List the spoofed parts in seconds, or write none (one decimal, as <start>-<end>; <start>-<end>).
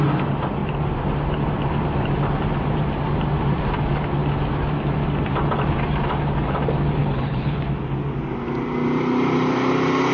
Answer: 7.0-7.6